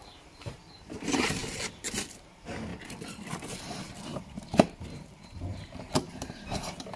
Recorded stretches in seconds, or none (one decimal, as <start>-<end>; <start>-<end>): 1.4-2.2; 2.7-3.3